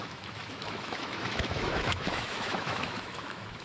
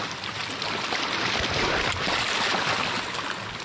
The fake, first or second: first